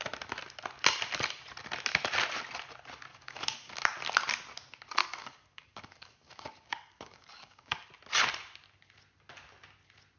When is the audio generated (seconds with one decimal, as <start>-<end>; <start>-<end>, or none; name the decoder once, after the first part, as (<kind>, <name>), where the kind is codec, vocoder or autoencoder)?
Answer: 3.1-3.7 (codec, DAC); 5.0-7.9